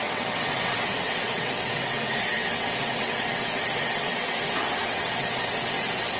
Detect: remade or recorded remade